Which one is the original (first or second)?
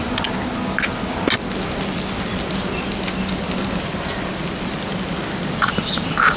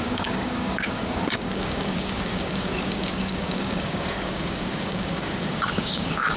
first